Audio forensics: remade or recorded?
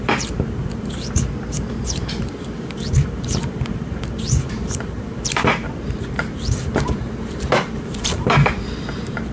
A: remade